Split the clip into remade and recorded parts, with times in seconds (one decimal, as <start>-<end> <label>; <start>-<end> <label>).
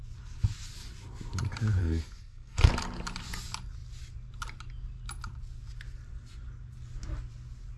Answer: 0.0-1.8 recorded; 1.8-2.7 remade; 2.7-7.8 recorded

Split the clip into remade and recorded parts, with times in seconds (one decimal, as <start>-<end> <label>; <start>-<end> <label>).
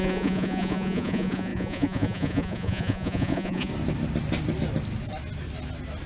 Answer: 0.0-3.7 remade; 3.7-6.1 recorded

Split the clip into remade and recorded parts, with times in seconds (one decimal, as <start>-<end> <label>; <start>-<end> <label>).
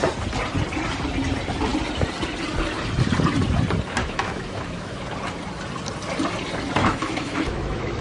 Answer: 0.0-4.0 recorded; 4.0-5.0 remade; 5.0-6.8 recorded; 6.8-8.0 remade